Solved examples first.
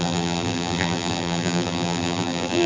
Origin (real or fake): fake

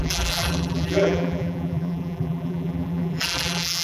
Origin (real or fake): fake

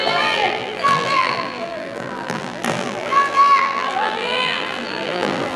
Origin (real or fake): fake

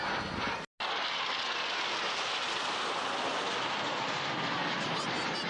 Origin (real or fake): real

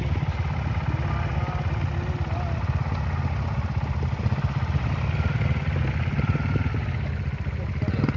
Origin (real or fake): real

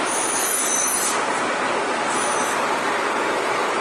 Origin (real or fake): fake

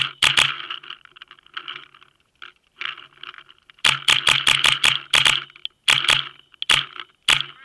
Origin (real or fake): real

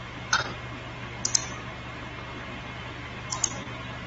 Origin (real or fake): real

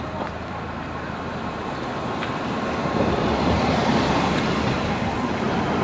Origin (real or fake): fake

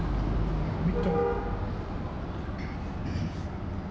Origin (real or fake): real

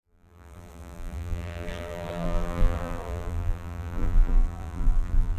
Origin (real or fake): fake